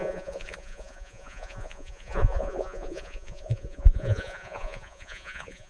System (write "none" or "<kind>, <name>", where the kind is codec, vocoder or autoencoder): vocoder, Vocos